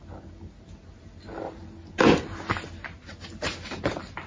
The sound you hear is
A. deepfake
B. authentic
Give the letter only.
B